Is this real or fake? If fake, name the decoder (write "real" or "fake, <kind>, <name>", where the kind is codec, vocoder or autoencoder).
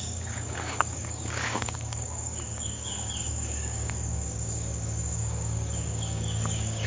fake, codec, DAC